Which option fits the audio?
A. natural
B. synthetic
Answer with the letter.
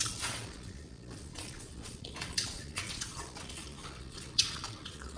B